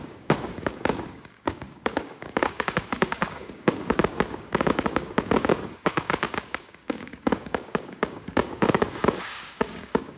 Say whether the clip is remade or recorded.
remade